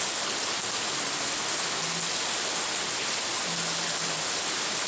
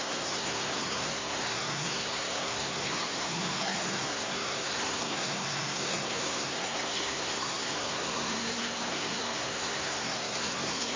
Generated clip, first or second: second